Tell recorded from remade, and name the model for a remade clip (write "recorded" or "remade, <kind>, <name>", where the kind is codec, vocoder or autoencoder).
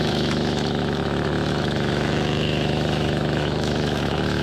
remade, autoencoder, DAC-VAE